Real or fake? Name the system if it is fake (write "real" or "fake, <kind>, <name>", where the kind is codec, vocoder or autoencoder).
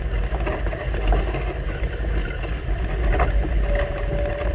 real